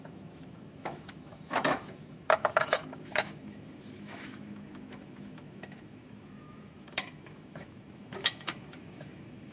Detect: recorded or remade remade